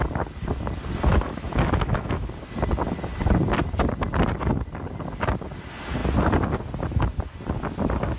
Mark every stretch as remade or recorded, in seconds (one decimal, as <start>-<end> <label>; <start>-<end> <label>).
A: 0.0-1.1 recorded; 1.1-2.3 remade; 2.3-8.2 recorded

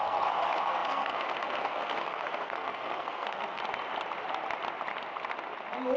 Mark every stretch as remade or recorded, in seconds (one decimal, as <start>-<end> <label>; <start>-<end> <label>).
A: 0.0-3.6 remade; 3.6-6.0 recorded

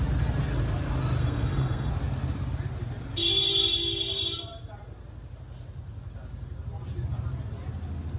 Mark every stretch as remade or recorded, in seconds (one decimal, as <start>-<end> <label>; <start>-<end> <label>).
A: 0.0-1.2 recorded; 1.2-1.9 remade; 1.9-8.2 recorded

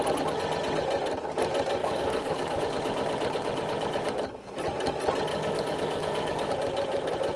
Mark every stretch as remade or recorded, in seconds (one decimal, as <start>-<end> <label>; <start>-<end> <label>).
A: 0.0-1.8 recorded; 1.8-2.6 remade; 2.6-5.3 recorded; 5.3-6.5 remade; 6.5-7.4 recorded